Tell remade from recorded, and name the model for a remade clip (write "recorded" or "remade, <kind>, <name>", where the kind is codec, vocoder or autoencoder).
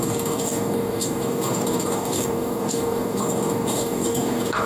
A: remade, codec, DAC